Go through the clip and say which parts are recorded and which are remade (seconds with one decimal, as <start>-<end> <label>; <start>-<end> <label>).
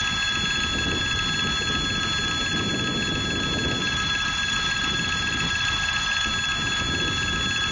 0.0-3.8 recorded; 3.8-6.3 remade; 6.3-7.7 recorded